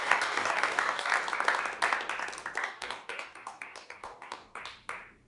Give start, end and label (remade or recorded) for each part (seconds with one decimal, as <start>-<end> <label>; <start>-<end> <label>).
0.0-1.1 remade; 1.1-2.6 recorded; 2.6-4.6 remade; 4.6-5.3 recorded